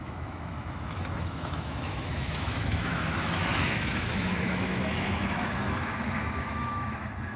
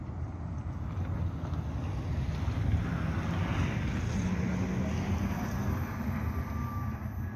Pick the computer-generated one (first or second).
first